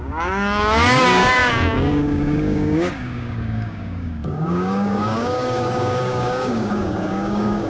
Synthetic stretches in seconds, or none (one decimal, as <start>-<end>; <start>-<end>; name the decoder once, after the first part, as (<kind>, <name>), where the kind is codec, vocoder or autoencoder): 0.0-7.7 (codec, DAC)